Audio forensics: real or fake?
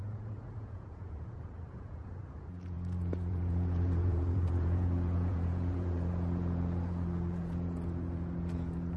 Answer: fake